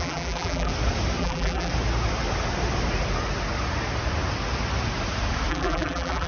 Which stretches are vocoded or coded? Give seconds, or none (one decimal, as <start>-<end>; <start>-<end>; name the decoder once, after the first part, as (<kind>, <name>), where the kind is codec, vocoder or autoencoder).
0.0-0.7 (vocoder, BigVGAN v2); 1.2-1.7; 5.5-6.3